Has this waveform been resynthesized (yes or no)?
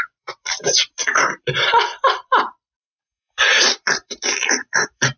yes